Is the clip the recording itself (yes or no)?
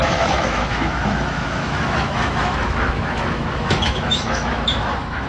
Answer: no